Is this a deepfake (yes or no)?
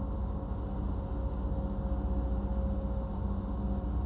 no